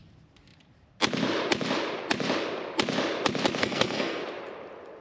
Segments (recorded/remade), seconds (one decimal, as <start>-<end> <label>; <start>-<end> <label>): 0.0-3.6 recorded; 3.6-4.2 remade; 4.2-5.0 recorded